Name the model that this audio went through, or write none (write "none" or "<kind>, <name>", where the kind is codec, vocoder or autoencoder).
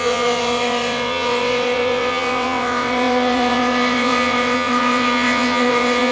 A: vocoder, WaveNeXt